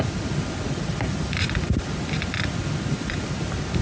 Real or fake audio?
real